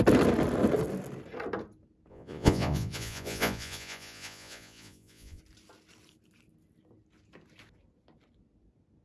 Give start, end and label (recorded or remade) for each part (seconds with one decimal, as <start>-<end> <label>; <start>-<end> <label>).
0.0-2.1 recorded; 2.1-5.4 remade; 5.4-9.0 recorded